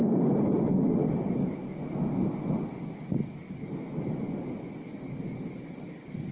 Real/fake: real